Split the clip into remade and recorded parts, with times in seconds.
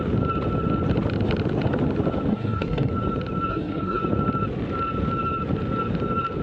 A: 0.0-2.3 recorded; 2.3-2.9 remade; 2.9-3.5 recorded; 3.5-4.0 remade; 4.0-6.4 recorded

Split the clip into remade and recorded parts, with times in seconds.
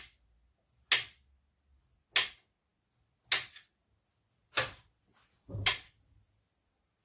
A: 0.0-7.0 recorded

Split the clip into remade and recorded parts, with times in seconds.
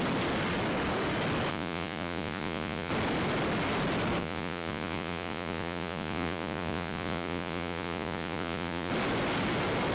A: 0.0-1.5 recorded; 1.5-2.9 remade; 2.9-4.2 recorded; 4.2-8.9 remade; 8.9-9.9 recorded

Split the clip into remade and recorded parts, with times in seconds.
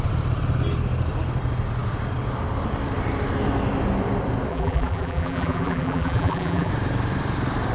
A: 0.0-4.5 recorded; 4.5-6.7 remade; 6.7-7.7 recorded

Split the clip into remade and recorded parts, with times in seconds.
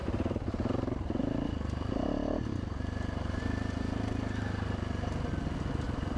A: 0.0-1.2 remade; 1.2-6.2 recorded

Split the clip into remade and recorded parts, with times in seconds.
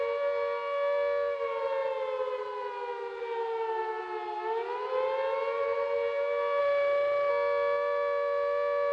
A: 0.0-6.6 recorded; 6.6-7.3 remade; 7.3-8.9 recorded